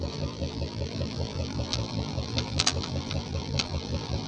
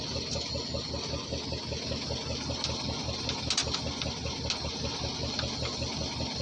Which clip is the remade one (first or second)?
first